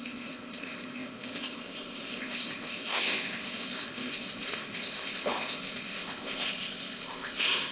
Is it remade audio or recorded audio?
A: remade